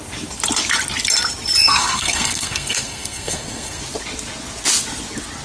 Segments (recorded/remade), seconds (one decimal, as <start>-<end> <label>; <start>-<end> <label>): 0.0-1.6 recorded; 1.6-3.8 remade; 3.8-5.4 recorded

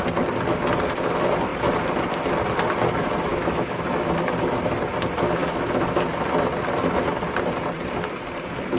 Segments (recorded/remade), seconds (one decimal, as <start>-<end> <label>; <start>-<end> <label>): 0.0-3.3 recorded; 3.3-4.3 remade; 4.3-5.4 recorded; 5.4-6.1 remade; 6.1-8.8 recorded

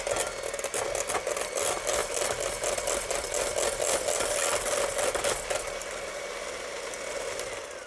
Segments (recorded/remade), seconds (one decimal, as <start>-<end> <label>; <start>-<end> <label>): 0.0-2.0 recorded; 2.0-6.3 remade; 6.3-7.9 recorded

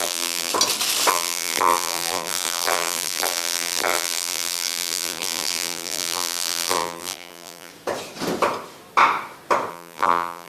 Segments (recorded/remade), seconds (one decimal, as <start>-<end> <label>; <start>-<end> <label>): 0.0-0.5 remade; 0.5-1.1 recorded; 1.1-7.7 remade; 7.7-9.7 recorded; 9.7-10.5 remade

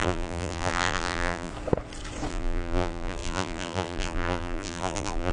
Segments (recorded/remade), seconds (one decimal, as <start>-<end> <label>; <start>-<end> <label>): 0.0-1.5 remade; 1.5-2.3 recorded; 2.3-5.3 remade

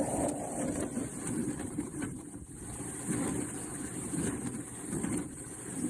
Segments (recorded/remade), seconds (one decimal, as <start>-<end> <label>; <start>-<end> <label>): 0.0-1.4 recorded; 1.4-3.1 remade; 3.1-5.2 recorded; 5.2-5.9 remade